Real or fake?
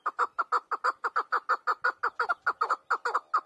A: real